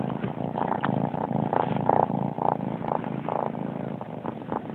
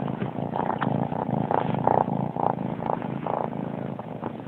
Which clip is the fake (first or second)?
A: second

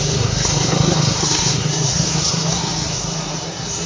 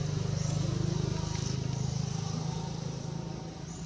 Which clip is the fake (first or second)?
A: first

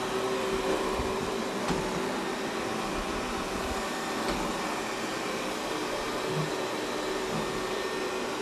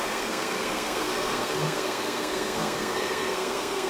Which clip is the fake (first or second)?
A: second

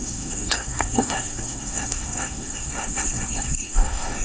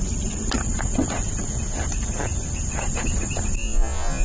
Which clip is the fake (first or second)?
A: first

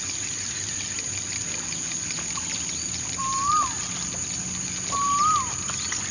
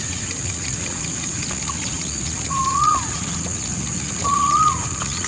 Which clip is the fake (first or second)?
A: second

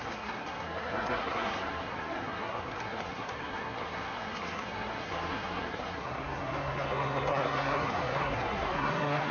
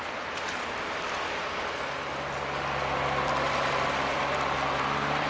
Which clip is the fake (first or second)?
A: first